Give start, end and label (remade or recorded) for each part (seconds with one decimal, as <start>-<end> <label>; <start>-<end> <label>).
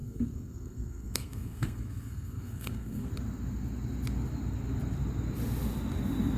0.0-3.1 remade; 3.1-6.4 recorded